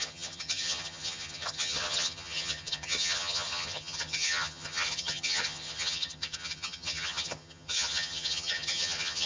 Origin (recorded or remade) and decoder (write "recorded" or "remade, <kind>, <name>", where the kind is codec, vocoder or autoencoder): remade, vocoder, HiFi-GAN